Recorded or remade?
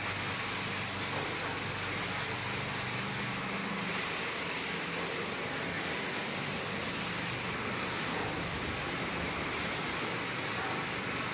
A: recorded